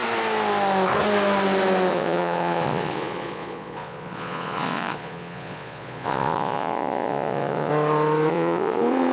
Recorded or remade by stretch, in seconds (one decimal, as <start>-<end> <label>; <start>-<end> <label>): 0.0-1.9 recorded; 1.9-7.7 remade; 7.7-8.3 recorded; 8.3-9.1 remade